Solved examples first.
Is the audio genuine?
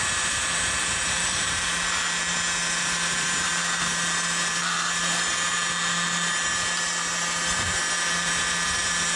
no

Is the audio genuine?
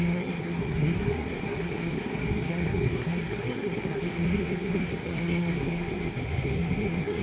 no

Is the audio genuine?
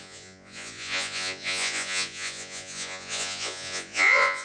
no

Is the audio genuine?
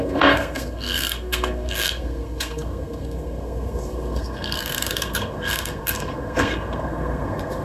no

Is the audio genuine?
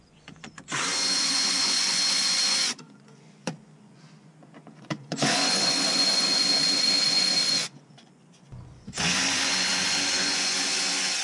no